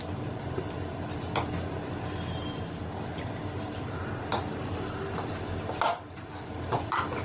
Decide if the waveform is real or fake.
real